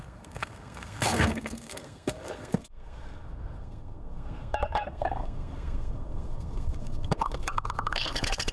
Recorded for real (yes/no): no